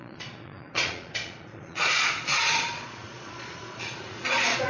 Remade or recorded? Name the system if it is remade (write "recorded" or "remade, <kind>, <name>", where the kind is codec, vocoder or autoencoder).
remade, vocoder, Vocos